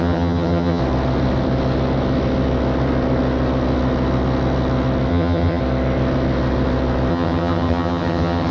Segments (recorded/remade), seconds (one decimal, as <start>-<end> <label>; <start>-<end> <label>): 0.0-0.8 remade; 0.8-5.1 recorded; 5.1-5.6 remade; 5.6-7.1 recorded; 7.1-8.5 remade